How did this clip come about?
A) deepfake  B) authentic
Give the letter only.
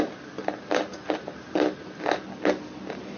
B